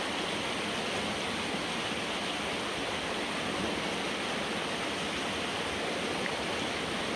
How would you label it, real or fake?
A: real